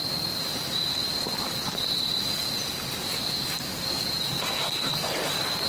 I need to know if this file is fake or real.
real